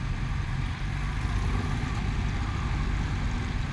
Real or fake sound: real